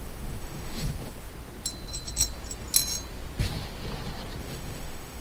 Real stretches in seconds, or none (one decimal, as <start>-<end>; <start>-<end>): 1.3-4.4